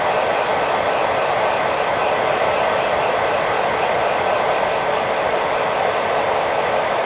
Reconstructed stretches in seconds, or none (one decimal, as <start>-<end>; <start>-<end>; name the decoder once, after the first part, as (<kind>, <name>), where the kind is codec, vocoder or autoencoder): none